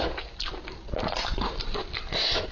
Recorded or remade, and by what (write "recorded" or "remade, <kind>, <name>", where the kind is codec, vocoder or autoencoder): recorded